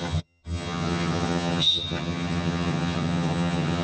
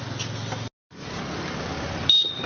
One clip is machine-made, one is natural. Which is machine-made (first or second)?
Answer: first